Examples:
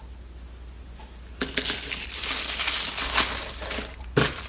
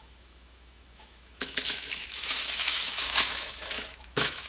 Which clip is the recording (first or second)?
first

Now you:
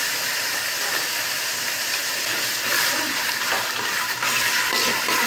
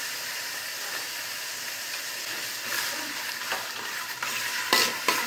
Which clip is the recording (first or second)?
first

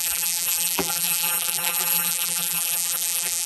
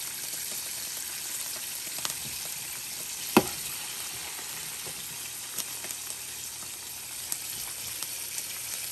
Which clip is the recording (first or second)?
second